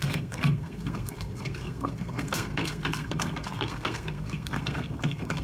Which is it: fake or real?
fake